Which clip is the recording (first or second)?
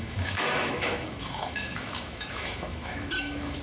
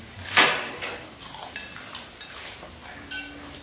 second